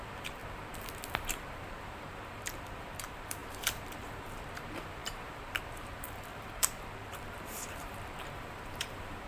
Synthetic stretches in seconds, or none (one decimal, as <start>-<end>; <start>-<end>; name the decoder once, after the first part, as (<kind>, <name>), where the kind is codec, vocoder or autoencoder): 0.0-0.4 (vocoder, BigVGAN v2); 1.1-9.3